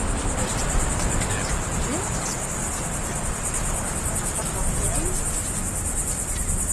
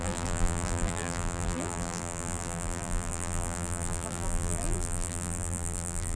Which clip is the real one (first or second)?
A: first